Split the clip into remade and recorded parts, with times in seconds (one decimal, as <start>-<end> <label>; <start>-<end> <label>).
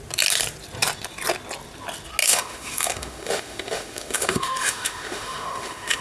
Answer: 0.0-2.2 recorded; 2.2-6.0 remade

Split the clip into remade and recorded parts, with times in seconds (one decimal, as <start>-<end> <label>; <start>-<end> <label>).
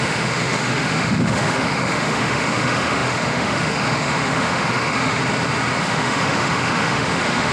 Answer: 0.0-5.2 remade; 5.2-5.8 recorded; 5.8-7.5 remade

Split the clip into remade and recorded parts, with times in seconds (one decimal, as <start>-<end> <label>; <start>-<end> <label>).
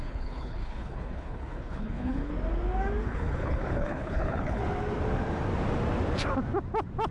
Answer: 0.0-2.3 remade; 2.3-3.0 recorded; 3.0-4.6 remade; 4.6-7.1 recorded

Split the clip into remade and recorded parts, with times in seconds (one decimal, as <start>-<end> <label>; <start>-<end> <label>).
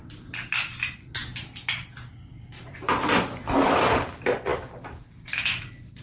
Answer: 0.0-6.0 recorded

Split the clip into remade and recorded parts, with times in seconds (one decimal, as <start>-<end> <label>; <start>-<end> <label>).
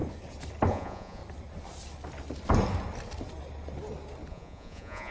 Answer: 0.0-0.7 recorded; 0.7-1.2 remade; 1.2-4.3 recorded; 4.3-5.1 remade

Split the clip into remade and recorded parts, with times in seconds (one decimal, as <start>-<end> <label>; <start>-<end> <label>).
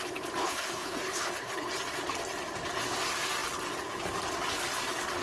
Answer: 0.0-0.4 recorded; 0.4-1.7 remade; 1.7-5.2 recorded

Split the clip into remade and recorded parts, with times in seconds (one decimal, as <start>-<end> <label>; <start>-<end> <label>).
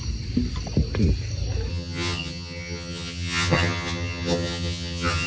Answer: 0.0-1.7 recorded; 1.7-5.3 remade